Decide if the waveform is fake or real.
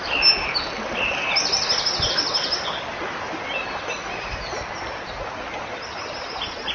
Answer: real